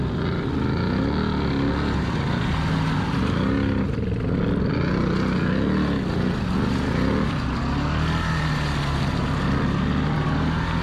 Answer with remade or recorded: recorded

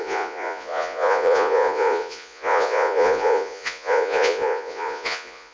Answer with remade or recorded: remade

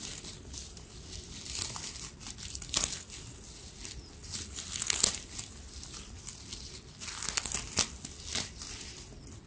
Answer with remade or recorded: recorded